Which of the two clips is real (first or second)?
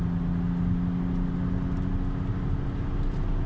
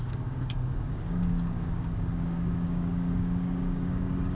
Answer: first